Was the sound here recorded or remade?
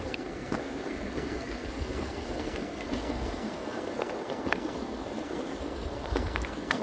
remade